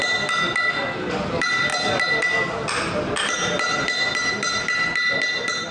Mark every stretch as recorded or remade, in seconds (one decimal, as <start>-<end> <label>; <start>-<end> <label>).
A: 0.0-5.7 recorded